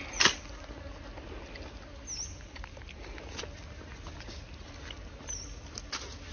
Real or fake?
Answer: real